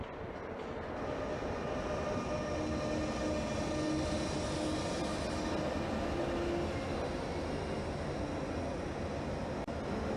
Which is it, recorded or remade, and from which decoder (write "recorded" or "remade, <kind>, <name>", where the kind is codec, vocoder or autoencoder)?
recorded